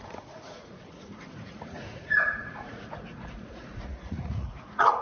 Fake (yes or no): yes